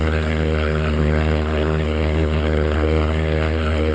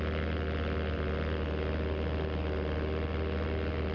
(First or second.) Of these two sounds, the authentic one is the second